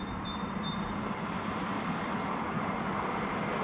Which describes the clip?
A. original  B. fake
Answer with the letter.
A